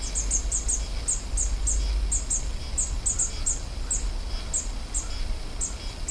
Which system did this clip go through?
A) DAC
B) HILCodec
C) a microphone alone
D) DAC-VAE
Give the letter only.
C